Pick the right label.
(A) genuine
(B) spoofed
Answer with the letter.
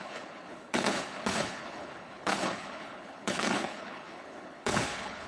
B